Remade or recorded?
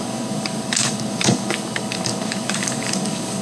remade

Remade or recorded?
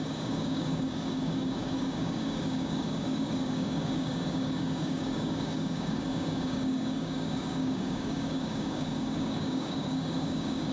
remade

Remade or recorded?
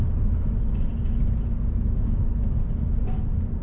recorded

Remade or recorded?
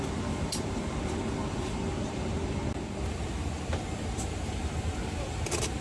recorded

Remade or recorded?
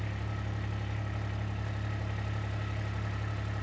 recorded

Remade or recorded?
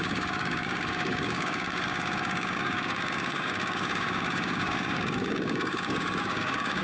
remade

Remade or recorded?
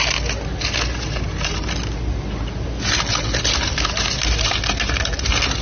recorded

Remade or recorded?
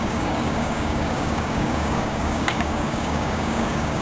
remade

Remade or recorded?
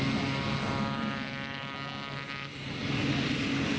recorded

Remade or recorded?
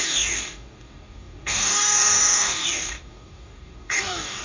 remade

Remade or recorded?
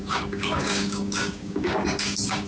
remade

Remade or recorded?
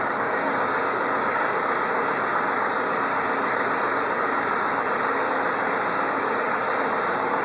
remade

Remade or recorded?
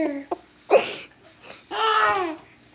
recorded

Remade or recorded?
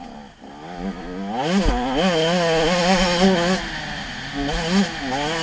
recorded